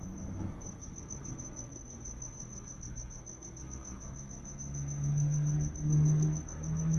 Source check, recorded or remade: remade